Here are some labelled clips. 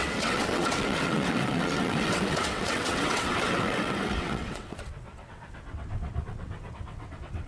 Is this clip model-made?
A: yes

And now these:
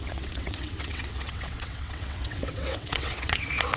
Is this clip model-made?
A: yes